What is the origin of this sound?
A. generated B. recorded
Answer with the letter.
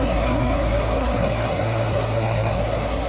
A